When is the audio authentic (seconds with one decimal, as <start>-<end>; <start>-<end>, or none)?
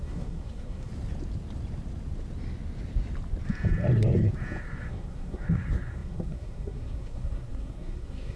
0.9-4.6